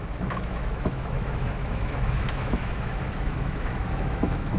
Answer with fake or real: fake